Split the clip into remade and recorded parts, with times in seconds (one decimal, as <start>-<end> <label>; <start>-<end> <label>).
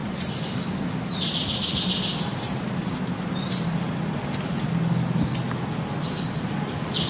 0.0-7.1 recorded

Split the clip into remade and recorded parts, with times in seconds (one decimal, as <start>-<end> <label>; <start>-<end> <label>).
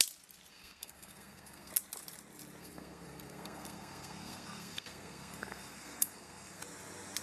0.0-0.5 recorded; 0.5-1.7 remade; 1.7-2.6 recorded; 2.6-6.6 remade; 6.6-7.2 recorded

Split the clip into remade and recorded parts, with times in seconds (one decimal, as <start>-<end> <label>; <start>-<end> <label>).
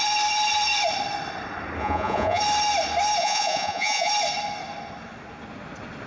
0.0-1.8 recorded; 1.8-2.4 remade; 2.4-3.2 recorded; 3.2-4.1 remade; 4.1-6.1 recorded